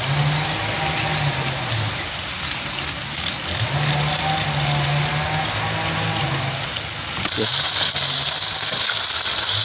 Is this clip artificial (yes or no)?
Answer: no